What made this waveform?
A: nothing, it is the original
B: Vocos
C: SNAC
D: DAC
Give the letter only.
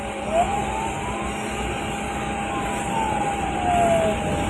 A